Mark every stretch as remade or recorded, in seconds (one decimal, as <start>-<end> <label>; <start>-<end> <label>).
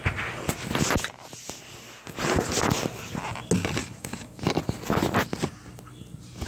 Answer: 0.0-3.8 recorded; 3.8-4.4 remade; 4.4-6.5 recorded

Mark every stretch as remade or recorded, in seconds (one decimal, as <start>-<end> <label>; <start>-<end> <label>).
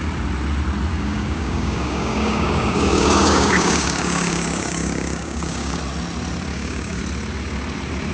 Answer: 0.0-0.9 recorded; 0.9-5.8 remade; 5.8-6.5 recorded; 6.5-7.0 remade; 7.0-8.1 recorded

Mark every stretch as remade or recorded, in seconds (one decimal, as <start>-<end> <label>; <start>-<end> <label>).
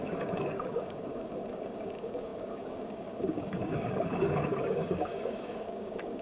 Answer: 0.0-6.2 remade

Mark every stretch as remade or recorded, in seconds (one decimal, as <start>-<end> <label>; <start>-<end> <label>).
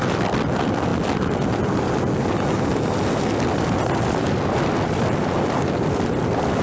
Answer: 0.0-6.6 recorded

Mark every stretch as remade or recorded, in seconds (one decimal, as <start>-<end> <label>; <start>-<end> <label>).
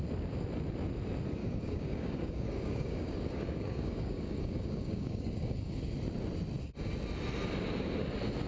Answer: 0.0-1.4 recorded; 1.4-5.8 remade; 5.8-8.5 recorded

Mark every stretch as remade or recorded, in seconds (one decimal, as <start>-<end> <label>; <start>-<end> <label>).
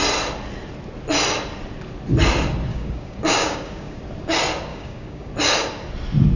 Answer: 0.0-2.7 recorded; 2.7-4.0 remade; 4.0-4.7 recorded; 4.7-5.3 remade; 5.3-6.4 recorded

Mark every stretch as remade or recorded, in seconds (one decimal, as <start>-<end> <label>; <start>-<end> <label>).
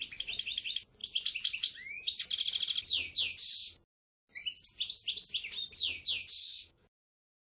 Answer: 0.0-6.4 recorded; 6.4-7.6 remade